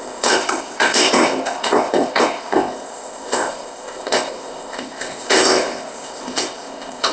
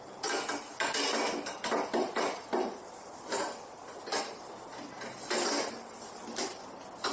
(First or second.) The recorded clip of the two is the second